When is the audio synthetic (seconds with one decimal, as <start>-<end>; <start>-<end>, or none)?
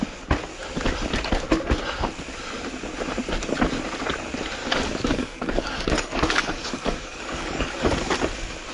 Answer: 4.6-7.9